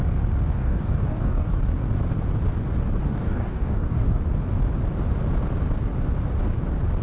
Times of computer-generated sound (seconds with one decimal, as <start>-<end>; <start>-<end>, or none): 0.6-1.6; 3.0-4.2